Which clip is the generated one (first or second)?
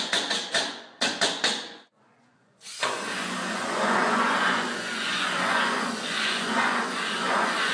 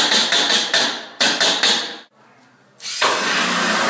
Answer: first